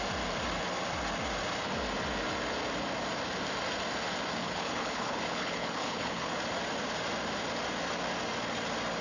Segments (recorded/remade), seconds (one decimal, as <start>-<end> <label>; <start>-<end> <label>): 0.0-4.4 recorded; 4.4-6.3 remade; 6.3-9.0 recorded